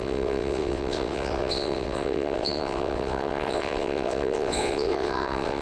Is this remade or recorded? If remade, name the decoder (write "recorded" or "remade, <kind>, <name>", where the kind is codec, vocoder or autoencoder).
remade, vocoder, WaveNeXt